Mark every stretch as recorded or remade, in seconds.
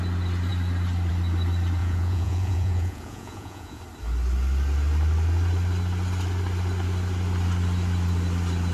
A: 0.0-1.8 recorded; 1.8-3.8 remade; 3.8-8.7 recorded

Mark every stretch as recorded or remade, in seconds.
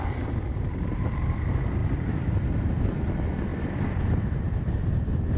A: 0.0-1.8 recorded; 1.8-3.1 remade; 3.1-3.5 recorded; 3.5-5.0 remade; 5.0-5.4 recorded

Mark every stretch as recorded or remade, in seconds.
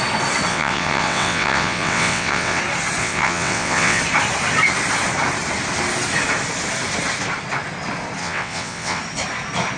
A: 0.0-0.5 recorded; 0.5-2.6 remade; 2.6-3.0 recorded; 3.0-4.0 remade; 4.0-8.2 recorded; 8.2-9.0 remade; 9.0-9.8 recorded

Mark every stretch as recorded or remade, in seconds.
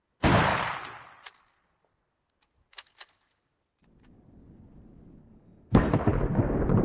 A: 0.0-5.2 recorded; 5.2-5.9 remade; 5.9-6.8 recorded